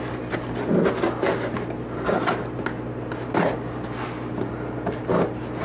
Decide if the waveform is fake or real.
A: real